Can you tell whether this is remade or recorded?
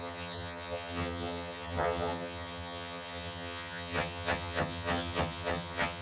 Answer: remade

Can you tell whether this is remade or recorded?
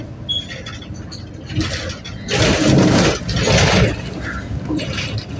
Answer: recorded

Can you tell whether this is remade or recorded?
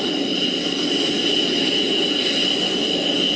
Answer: recorded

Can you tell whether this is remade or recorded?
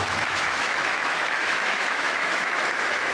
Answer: remade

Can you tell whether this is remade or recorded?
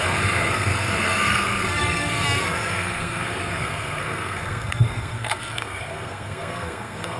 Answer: remade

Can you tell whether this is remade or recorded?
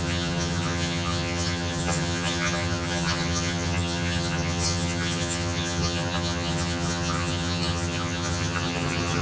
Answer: remade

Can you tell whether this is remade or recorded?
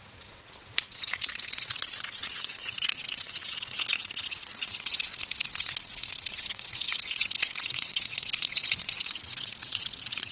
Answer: remade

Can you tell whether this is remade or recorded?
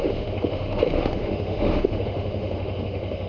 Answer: remade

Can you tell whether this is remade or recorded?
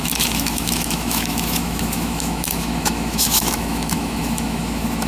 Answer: remade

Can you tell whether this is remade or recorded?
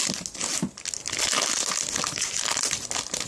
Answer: recorded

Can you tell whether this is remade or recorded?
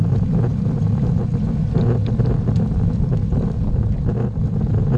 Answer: recorded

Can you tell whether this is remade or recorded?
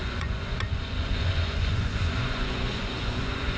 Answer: remade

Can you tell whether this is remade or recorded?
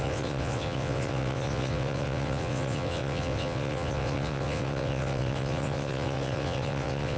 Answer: remade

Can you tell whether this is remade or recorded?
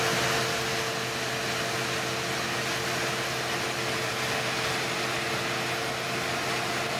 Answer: recorded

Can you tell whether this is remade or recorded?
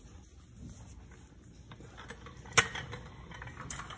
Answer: recorded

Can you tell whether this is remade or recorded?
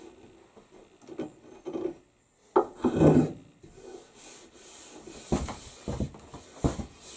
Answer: recorded